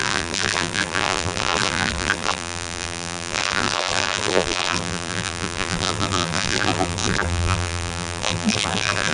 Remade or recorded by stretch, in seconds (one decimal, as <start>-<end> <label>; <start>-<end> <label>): 0.0-9.1 remade